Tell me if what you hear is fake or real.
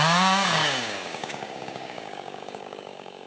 fake